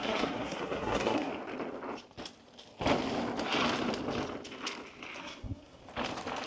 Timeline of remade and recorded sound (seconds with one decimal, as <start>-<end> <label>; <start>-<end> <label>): 0.0-1.3 remade; 1.3-5.2 recorded; 5.2-5.8 remade; 5.8-6.5 recorded